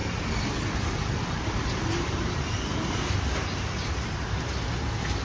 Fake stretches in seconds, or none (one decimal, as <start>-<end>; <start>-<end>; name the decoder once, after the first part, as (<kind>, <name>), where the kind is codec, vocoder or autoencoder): 0.0-3.1 (vocoder, BigVGAN v2)